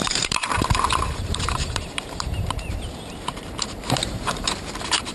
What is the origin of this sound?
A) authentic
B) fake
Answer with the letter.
B